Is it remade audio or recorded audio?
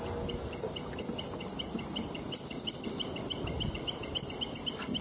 recorded